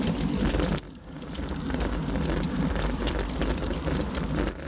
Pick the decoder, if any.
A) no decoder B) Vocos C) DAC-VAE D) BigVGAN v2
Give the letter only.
A